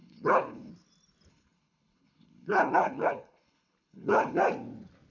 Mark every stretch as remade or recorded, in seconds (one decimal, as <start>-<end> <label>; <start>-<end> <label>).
0.0-0.7 remade; 0.7-1.3 recorded; 1.3-4.4 remade; 4.4-5.1 recorded